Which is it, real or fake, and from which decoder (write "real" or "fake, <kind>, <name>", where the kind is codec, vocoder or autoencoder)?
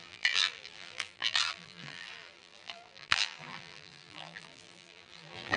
fake, vocoder, BigVGAN v2